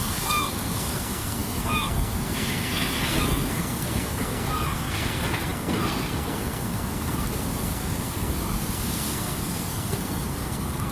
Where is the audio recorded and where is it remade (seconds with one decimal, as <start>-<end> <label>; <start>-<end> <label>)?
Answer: 0.0-10.9 remade